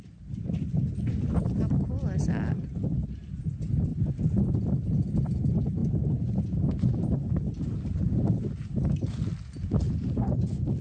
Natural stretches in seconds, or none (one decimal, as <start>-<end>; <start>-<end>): 0.0-10.8